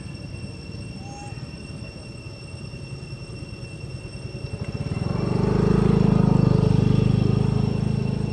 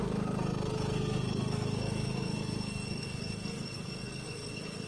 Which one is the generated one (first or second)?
second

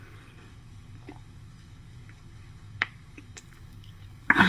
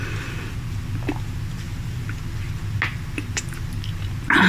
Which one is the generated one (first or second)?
first